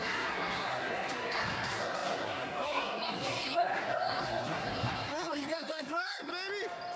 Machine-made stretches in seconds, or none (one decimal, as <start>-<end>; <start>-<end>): 0.0-6.3